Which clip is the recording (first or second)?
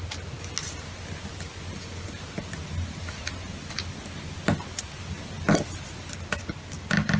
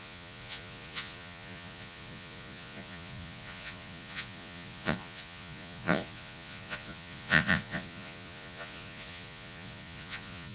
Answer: first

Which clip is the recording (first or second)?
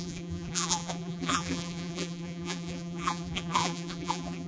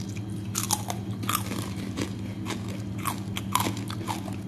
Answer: second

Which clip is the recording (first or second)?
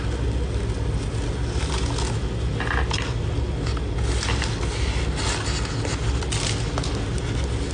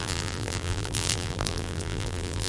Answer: first